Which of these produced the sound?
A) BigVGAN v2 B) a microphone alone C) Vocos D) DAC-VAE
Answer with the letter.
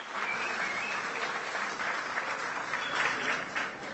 B